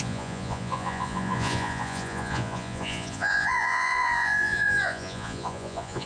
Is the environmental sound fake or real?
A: fake